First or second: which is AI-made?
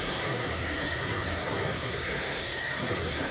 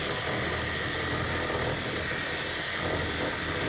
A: first